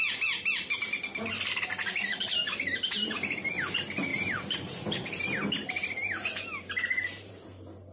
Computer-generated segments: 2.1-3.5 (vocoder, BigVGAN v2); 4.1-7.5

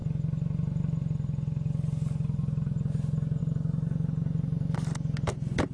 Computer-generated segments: none